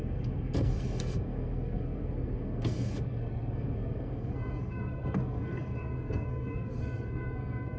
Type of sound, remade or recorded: remade